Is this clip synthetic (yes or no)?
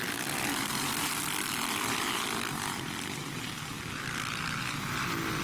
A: no